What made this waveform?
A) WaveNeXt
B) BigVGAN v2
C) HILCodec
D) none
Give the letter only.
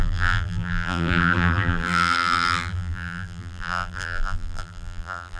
B